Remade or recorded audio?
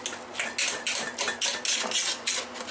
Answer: recorded